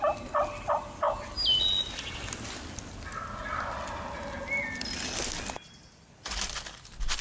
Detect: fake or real real